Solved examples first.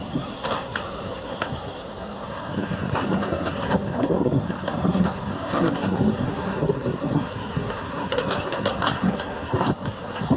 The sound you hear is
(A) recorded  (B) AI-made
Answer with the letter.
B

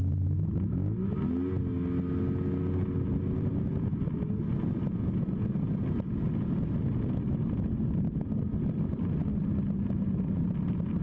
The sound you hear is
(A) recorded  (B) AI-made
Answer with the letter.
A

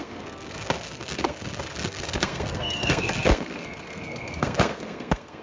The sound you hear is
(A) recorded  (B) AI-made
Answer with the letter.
B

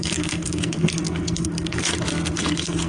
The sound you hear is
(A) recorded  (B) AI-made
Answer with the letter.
B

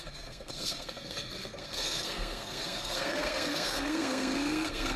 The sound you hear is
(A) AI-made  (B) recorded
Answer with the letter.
A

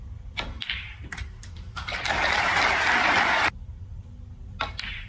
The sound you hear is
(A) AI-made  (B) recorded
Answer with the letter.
B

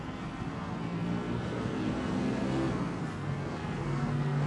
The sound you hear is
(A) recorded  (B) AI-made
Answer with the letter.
B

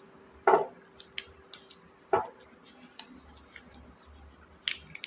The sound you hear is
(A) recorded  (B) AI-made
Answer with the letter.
A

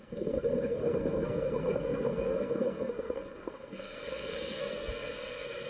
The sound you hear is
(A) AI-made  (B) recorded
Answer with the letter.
A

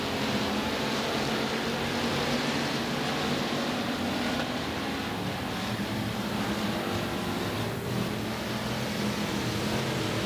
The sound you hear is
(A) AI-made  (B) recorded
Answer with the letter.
B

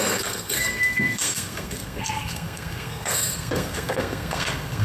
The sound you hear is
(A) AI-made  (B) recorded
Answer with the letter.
A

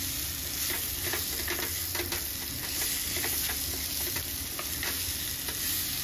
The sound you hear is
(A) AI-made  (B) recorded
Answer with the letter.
B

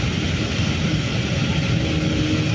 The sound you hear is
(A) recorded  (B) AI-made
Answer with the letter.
A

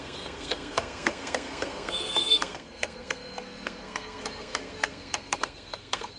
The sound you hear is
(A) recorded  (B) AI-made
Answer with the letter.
B